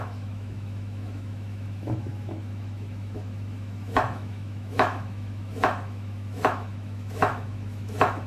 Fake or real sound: fake